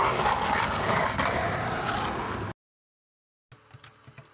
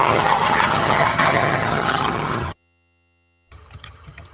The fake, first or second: second